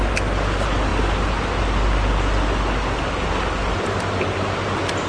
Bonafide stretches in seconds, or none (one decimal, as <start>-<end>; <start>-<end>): 0.0-5.1